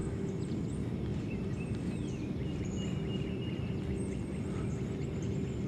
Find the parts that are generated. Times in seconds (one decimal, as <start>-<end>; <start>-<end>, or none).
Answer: 0.0-0.5; 1.1-3.7